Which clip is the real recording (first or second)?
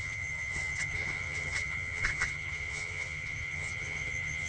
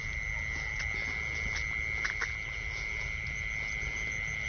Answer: second